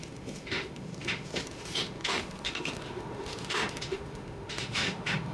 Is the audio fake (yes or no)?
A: yes